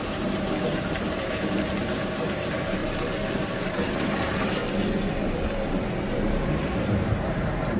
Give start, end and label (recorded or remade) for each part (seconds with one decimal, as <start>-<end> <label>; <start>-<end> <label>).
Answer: 0.0-2.8 remade; 2.8-3.4 recorded; 3.4-4.6 remade; 4.6-5.2 recorded; 5.2-7.8 remade